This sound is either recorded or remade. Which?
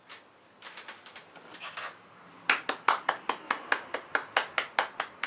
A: recorded